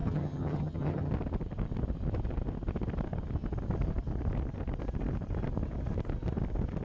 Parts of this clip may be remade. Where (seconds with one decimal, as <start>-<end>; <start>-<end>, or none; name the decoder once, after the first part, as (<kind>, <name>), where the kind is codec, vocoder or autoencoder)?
0.0-1.1 (vocoder, HiFi-GAN)